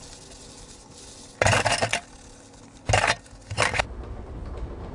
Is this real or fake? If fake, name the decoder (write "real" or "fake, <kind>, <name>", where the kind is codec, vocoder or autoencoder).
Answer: real